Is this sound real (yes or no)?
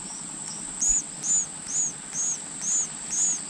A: yes